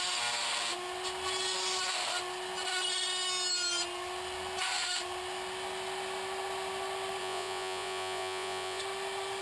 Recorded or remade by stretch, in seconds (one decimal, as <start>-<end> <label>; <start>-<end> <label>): 0.0-7.2 recorded; 7.2-8.8 remade; 8.8-9.4 recorded